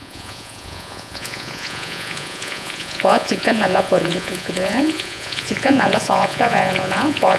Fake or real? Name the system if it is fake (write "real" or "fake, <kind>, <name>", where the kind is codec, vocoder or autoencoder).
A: fake, vocoder, Vocos